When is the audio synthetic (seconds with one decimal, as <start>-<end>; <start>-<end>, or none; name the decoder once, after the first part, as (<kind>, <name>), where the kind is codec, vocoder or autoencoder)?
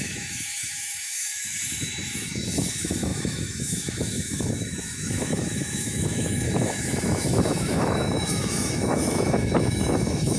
0.0-10.4 (autoencoder, DAC-VAE)